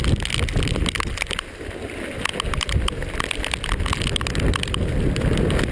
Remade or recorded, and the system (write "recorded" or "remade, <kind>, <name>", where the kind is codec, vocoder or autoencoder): recorded